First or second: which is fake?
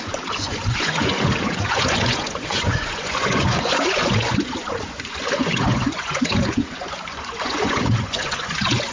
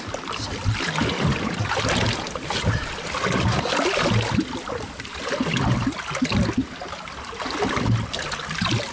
first